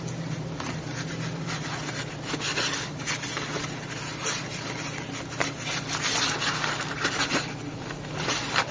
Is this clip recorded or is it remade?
recorded